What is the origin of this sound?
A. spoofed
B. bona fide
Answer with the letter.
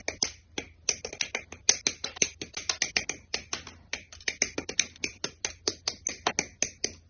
B